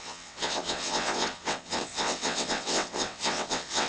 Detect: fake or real fake